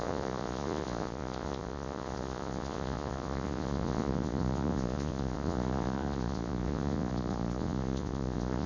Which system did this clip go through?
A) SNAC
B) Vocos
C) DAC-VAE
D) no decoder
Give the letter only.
B